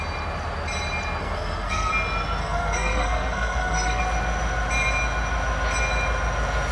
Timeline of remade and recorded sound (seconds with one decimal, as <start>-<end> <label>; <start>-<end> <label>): 0.0-1.2 recorded; 1.2-1.9 remade; 1.9-2.4 recorded; 2.4-4.0 remade; 4.0-6.7 recorded